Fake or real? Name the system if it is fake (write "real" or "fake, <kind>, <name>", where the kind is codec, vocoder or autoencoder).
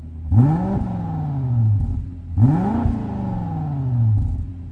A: real